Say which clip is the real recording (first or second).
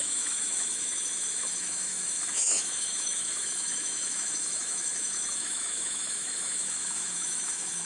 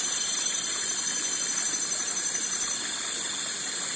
second